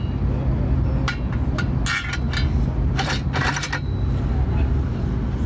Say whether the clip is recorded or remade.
recorded